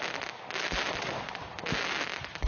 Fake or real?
real